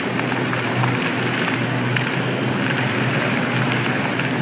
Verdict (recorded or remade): recorded